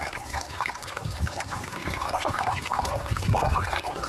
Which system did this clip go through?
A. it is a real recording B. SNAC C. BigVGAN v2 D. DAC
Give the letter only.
B